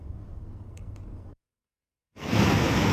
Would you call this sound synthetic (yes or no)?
yes